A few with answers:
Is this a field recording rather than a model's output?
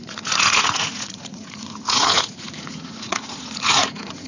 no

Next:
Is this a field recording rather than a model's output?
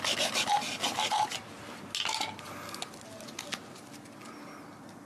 yes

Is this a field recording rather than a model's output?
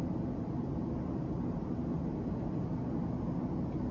yes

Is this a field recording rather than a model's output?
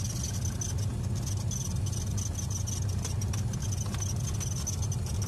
yes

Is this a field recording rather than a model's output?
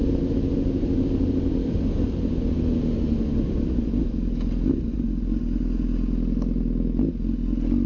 yes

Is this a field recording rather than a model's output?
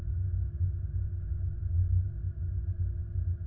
yes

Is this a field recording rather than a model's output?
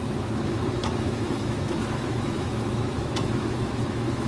no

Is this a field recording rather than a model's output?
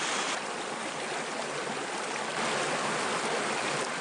yes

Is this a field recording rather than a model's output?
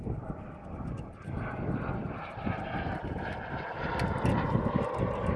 yes